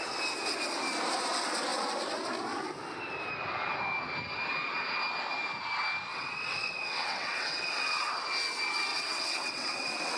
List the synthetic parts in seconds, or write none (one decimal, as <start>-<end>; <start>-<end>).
6.1-8.2; 8.9-10.2